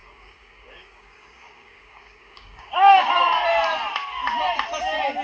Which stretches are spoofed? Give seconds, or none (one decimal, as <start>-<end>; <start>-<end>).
0.0-3.1